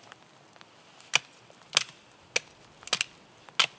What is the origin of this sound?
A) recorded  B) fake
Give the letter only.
A